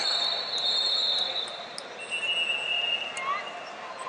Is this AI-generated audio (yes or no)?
no